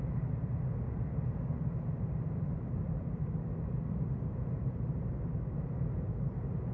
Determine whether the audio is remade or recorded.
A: recorded